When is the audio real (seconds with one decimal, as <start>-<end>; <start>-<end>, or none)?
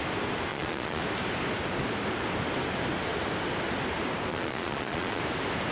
0.0-0.5; 1.0-4.3; 5.2-5.7